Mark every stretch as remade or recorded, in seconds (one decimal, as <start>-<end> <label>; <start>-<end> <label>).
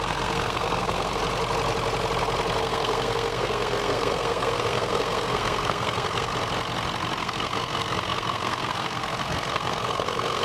0.0-1.2 remade; 1.2-2.6 recorded; 2.6-6.3 remade; 6.3-7.2 recorded; 7.2-10.4 remade